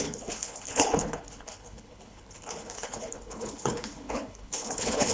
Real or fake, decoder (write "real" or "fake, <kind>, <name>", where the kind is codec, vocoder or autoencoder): fake, codec, HILCodec